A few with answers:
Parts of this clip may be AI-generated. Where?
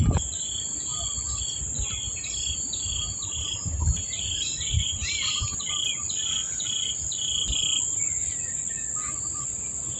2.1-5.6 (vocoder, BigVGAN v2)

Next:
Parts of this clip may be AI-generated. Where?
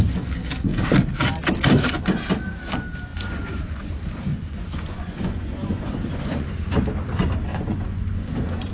3.1-3.9 (vocoder, Vocos); 4.3-6.5; 7.5-8.7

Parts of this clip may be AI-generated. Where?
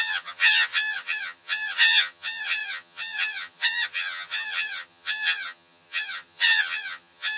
0.0-7.4 (vocoder, HiFi-GAN)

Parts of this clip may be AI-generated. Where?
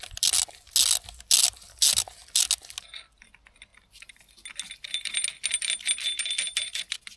none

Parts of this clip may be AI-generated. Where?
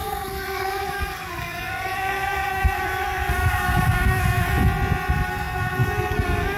0.0-4.5 (codec, SNAC); 5.3-6.6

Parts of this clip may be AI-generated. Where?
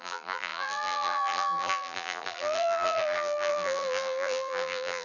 0.0-5.0 (vocoder, BigVGAN v2)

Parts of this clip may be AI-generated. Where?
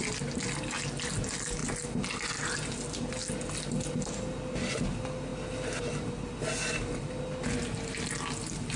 none